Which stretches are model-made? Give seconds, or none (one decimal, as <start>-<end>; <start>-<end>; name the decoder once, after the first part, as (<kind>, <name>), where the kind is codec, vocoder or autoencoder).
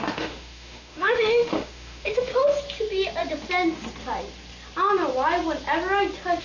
0.0-2.3 (autoencoder, DAC-VAE)